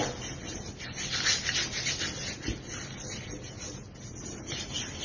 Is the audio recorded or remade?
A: recorded